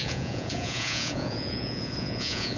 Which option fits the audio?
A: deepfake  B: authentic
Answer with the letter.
A